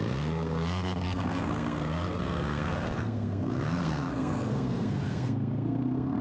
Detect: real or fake fake